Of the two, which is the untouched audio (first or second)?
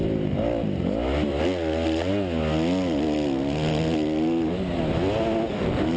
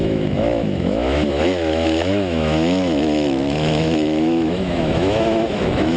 first